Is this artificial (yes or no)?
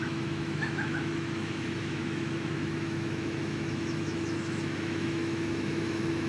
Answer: yes